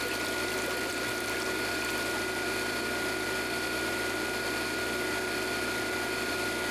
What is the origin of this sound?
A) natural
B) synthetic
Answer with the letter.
A